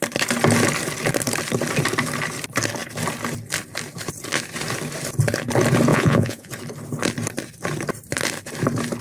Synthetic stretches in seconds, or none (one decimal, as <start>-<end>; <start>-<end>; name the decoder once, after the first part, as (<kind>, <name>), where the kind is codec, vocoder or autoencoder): 5.9-6.5 (vocoder, Vocos)